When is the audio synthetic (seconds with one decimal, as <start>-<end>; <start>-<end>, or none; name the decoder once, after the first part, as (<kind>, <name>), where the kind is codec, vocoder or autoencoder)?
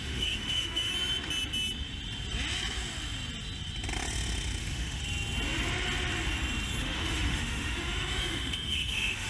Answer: 0.0-0.9 (autoencoder, DAC-VAE); 4.6-5.0; 6.8-9.3